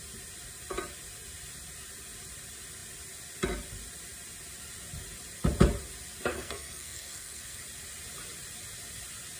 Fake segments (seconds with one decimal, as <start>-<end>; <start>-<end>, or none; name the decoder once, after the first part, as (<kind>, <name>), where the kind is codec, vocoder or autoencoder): 6.3-7.6 (codec, SNAC)

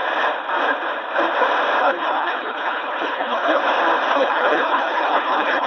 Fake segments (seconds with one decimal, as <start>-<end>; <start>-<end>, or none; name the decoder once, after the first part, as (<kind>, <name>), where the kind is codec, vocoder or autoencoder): 1.8-3.6 (codec, HILCodec); 4.1-5.7

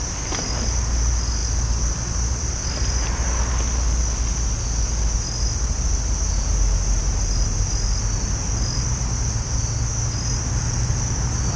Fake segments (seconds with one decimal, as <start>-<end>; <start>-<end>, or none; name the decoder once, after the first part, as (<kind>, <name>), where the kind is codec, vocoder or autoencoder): none

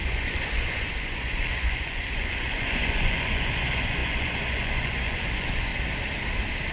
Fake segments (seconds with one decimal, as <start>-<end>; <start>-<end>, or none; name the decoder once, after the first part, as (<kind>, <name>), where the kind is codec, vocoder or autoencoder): 0.0-5.7 (vocoder, Vocos)

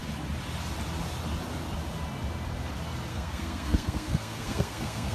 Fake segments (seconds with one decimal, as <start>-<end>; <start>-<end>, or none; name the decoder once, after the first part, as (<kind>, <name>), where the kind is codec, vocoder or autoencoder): 3.1-5.1 (codec, SNAC)

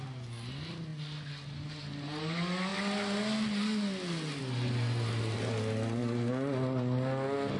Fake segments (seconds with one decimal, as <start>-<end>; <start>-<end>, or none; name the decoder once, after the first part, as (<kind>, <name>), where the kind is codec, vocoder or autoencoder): none

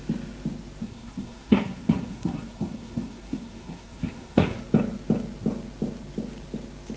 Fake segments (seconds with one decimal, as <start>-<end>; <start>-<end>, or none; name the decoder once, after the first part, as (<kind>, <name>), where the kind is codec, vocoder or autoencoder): 0.8-4.6 (codec, SNAC)